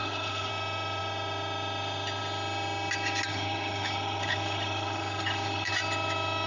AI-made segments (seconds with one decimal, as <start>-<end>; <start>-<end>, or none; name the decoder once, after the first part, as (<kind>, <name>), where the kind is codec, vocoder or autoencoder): 0.0-0.5 (codec, HILCodec); 3.3-5.7